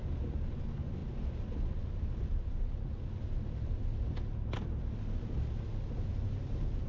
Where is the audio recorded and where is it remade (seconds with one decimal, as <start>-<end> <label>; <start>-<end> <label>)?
0.0-6.9 recorded